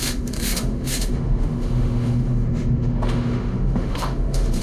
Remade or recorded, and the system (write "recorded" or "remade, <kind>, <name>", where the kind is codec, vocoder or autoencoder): remade, autoencoder, DAC-VAE